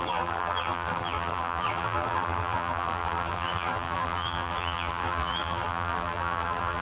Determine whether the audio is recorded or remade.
remade